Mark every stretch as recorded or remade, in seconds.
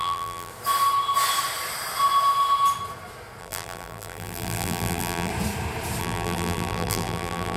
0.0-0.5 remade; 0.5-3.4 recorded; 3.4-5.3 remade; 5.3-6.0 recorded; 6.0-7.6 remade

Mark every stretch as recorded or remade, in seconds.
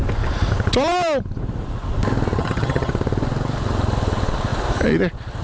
0.0-2.4 recorded; 2.4-2.9 remade; 2.9-5.4 recorded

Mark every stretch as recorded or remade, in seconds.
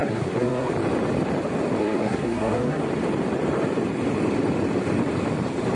0.0-0.7 remade; 0.7-1.8 recorded; 1.8-2.8 remade; 2.8-5.8 recorded